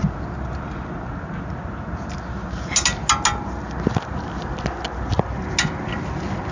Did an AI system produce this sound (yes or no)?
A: no